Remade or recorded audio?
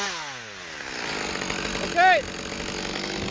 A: recorded